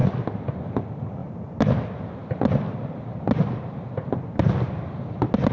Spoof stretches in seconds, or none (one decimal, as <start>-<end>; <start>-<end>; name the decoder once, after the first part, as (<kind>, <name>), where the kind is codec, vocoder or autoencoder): none